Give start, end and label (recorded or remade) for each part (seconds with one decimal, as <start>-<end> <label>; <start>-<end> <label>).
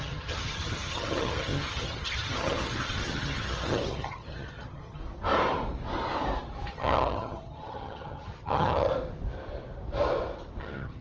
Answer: 0.0-5.0 remade; 5.0-6.7 recorded; 6.7-8.9 remade; 8.9-10.6 recorded; 10.6-11.0 remade